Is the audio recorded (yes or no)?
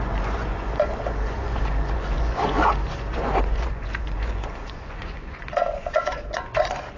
no